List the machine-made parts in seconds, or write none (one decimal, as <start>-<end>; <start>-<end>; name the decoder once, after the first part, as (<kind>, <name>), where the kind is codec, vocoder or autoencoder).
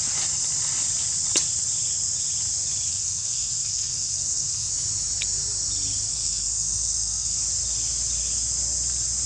2.9-4.7 (codec, SNAC); 6.1-7.4